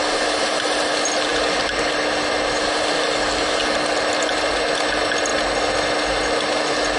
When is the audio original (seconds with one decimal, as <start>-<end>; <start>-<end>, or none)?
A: 0.0-7.0